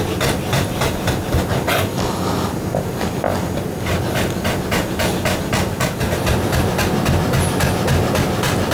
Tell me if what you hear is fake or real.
real